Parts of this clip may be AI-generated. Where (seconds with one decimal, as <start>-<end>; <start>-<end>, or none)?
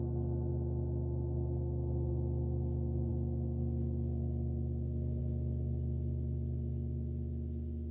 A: none